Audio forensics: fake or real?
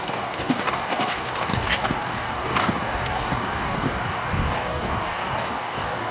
fake